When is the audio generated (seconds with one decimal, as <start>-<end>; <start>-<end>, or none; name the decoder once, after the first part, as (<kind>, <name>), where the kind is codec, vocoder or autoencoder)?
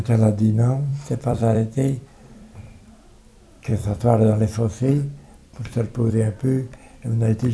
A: 0.9-2.8 (vocoder, BigVGAN v2); 5.4-6.1